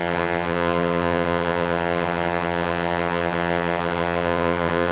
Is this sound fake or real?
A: fake